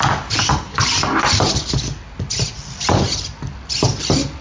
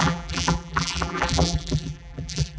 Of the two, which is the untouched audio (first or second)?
first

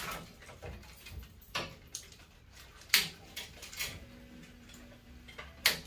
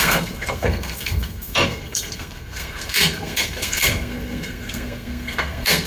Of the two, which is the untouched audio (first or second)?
first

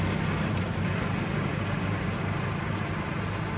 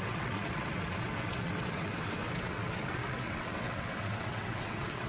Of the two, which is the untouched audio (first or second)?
first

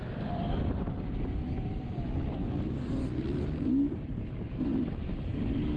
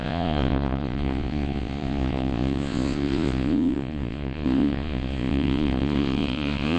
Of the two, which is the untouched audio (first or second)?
first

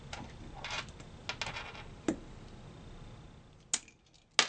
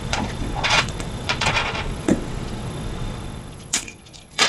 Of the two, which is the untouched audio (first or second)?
first